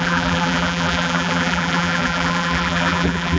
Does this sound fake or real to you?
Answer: fake